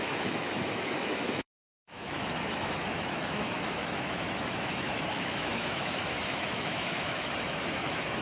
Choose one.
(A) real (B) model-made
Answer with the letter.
B